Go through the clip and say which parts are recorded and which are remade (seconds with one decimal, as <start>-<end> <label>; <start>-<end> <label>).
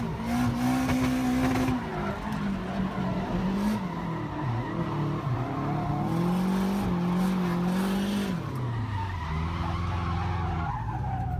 0.0-11.4 recorded